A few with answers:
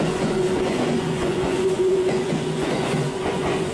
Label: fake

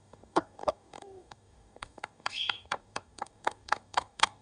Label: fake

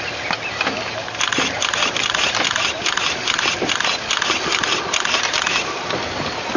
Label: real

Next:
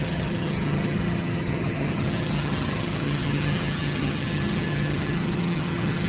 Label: fake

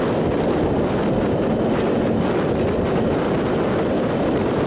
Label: real